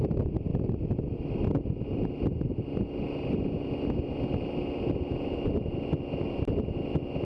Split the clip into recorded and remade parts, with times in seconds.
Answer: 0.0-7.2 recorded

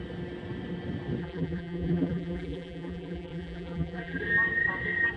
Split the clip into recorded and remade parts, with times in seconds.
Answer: 0.0-1.2 recorded; 1.2-4.2 remade; 4.2-5.2 recorded

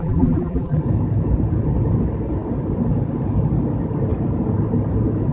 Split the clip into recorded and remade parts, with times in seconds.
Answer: 0.0-0.8 remade; 0.8-5.3 recorded